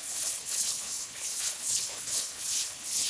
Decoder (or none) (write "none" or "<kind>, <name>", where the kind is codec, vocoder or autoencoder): codec, HILCodec